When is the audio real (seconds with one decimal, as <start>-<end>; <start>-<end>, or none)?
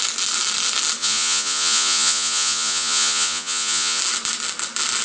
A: 0.0-1.0; 4.0-5.0